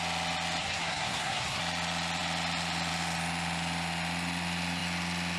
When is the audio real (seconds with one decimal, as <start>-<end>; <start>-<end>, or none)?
0.0-0.6; 1.6-5.4